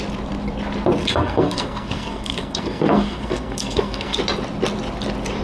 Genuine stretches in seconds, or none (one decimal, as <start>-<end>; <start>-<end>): 0.0-1.0; 4.2-5.4